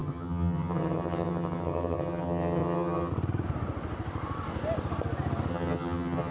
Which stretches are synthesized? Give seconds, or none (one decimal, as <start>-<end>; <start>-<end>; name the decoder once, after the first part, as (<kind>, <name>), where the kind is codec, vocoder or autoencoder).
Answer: 0.0-3.1 (vocoder, HiFi-GAN); 5.5-6.3